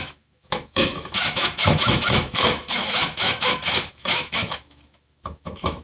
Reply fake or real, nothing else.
fake